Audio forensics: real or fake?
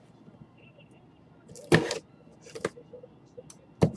real